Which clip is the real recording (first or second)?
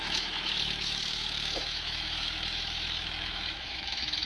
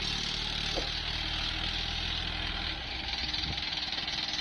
second